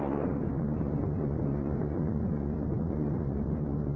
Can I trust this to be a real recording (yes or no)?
no